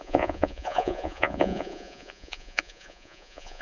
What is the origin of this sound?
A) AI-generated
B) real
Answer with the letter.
A